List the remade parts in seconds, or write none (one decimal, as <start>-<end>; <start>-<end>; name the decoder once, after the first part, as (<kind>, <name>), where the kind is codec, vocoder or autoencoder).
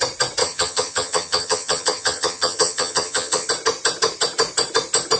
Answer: 0.4-3.5 (vocoder, HiFi-GAN)